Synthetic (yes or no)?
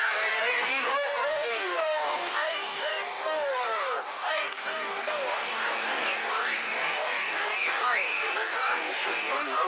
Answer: yes